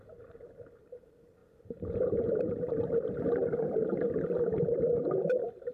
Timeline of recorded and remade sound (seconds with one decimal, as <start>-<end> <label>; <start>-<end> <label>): 0.0-5.7 remade